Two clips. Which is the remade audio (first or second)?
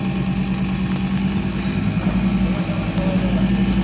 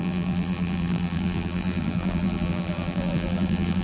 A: second